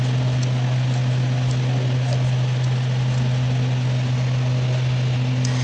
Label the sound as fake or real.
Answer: real